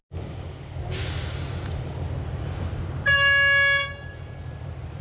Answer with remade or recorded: recorded